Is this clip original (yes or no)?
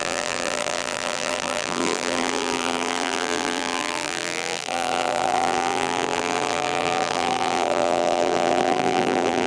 no